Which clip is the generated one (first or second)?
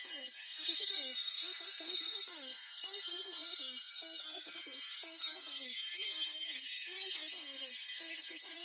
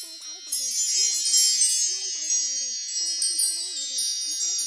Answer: first